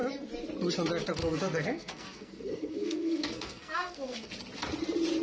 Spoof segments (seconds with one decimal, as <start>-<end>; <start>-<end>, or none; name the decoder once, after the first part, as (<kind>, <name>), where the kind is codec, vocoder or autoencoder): 1.2-4.3 (codec, SNAC)